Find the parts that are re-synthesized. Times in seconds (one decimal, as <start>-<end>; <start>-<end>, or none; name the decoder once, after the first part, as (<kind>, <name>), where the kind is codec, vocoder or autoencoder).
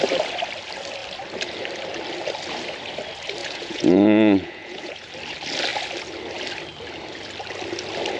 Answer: 3.4-5.1 (vocoder, Vocos)